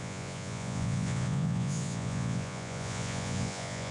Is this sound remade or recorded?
remade